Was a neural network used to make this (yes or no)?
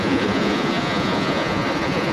yes